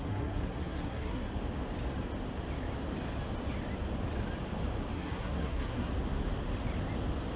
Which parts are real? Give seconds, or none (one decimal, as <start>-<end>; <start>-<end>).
1.3-4.9; 5.9-7.4